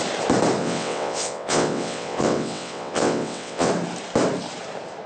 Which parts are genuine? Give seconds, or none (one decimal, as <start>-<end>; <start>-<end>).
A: 0.0-0.6; 3.7-5.1